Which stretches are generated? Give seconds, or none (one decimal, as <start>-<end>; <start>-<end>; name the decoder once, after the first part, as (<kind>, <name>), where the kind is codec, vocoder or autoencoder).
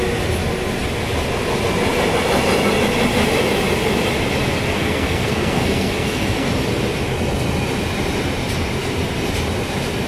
4.7-6.5 (codec, SNAC)